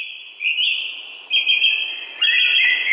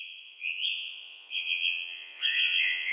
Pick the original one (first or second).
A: first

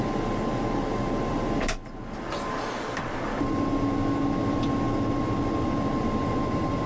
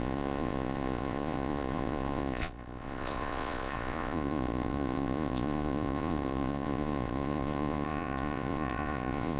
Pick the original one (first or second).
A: first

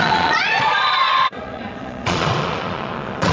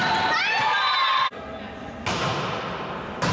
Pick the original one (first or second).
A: second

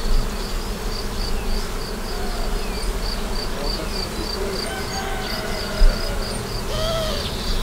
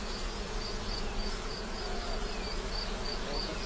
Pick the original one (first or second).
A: first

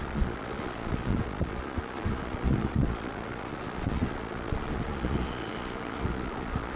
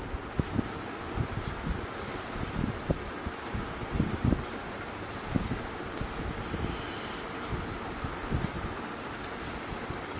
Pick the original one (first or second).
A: second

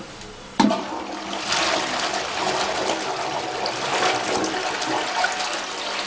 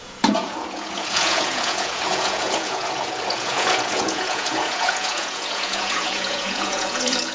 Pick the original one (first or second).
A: first